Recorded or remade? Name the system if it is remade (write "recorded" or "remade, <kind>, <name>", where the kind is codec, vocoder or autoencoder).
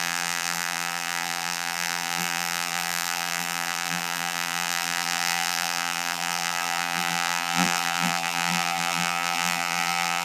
remade, vocoder, BigVGAN v2